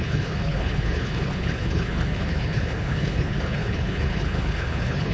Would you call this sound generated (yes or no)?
yes